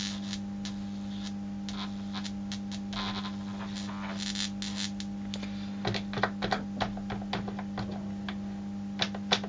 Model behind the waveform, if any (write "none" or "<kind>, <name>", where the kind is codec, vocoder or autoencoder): none